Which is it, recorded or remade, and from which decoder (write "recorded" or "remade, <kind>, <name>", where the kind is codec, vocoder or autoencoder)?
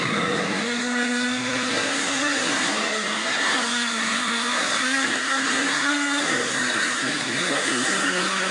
remade, codec, SNAC